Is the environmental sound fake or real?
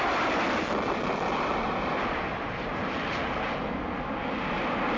real